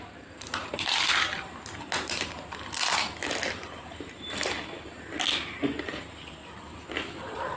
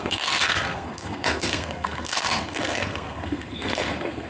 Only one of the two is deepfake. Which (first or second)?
second